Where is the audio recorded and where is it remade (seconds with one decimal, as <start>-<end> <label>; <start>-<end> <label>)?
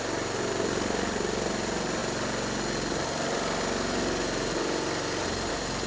0.0-5.9 recorded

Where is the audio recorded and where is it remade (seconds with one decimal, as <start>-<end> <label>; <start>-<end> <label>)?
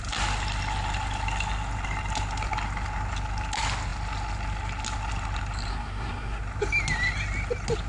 0.0-5.7 recorded; 5.7-6.4 remade; 6.4-7.9 recorded